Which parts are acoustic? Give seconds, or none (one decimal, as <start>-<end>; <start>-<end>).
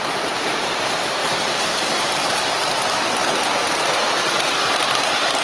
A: 1.2-3.6